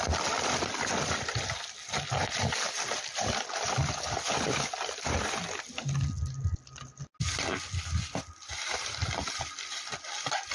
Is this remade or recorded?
recorded